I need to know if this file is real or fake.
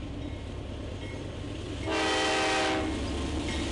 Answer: real